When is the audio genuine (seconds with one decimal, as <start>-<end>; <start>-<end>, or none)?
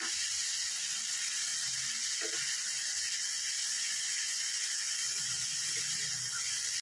0.0-3.6; 5.8-6.8